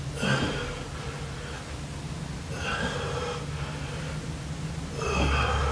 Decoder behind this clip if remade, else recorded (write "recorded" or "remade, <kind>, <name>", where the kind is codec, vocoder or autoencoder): recorded